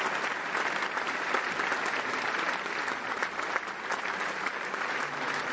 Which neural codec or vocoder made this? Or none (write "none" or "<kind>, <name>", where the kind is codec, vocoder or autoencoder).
none